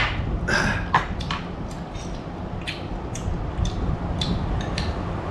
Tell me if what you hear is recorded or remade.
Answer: recorded